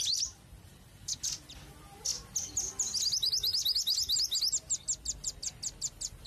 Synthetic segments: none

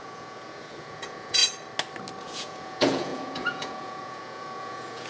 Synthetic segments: 0.0-1.4 (vocoder, Vocos); 2.2-5.1